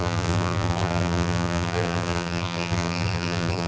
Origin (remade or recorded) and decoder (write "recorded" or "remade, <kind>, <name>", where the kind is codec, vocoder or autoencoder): remade, vocoder, BigVGAN v2